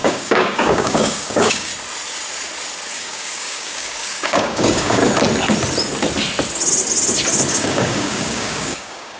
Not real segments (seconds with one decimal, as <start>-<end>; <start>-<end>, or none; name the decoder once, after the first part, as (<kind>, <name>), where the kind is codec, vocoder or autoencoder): 0.0-1.7 (codec, DAC); 2.9-5.0; 7.5-9.2